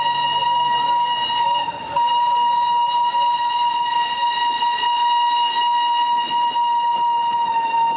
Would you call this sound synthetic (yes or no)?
no